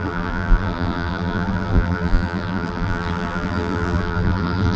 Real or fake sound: fake